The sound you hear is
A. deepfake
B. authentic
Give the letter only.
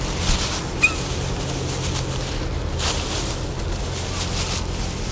B